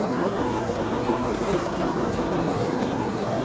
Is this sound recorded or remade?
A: remade